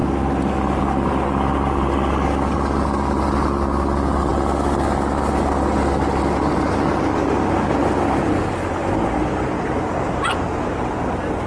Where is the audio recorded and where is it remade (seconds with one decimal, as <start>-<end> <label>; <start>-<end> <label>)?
0.0-11.5 recorded